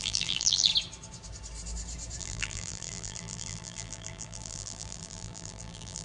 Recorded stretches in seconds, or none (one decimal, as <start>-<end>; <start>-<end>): 0.7-2.2